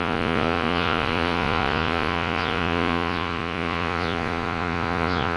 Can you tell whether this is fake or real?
fake